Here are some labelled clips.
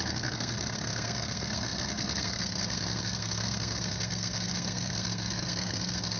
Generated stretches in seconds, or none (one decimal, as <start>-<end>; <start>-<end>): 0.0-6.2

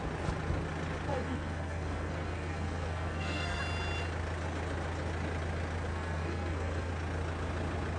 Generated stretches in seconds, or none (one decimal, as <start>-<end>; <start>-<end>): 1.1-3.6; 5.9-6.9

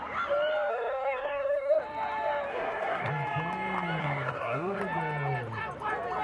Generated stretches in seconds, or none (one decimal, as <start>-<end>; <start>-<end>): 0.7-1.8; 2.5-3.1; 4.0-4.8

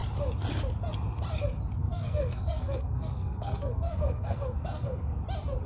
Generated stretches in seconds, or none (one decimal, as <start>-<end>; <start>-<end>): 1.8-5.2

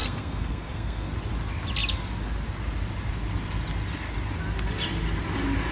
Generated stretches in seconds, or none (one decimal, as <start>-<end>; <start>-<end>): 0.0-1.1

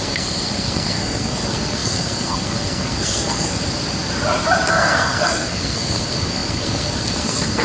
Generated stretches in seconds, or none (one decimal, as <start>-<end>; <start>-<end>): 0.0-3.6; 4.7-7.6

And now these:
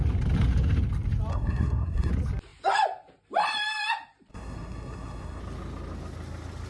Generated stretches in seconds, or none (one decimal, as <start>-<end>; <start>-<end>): 1.3-2.1; 4.3-5.4

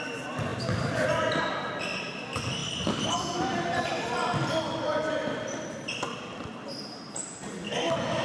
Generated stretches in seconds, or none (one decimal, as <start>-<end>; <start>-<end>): none